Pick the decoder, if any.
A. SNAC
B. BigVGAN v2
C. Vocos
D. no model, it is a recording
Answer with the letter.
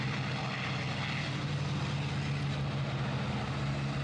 D